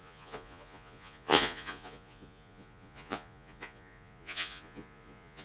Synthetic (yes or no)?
yes